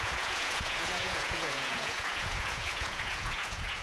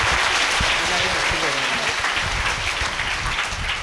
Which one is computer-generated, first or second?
first